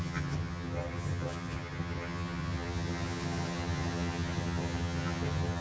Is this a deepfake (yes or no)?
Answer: yes